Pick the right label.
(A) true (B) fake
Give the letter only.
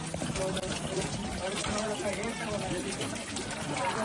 A